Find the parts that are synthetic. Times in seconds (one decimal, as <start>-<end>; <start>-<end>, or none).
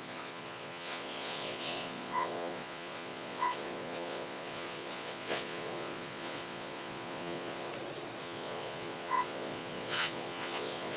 0.0-7.7; 8.2-11.0